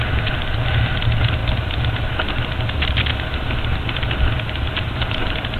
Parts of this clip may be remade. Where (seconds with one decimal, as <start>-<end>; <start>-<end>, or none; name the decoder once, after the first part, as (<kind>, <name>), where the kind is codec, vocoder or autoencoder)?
none